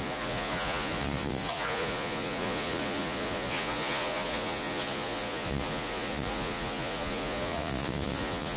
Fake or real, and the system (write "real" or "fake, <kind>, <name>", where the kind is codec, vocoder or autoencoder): fake, vocoder, Vocos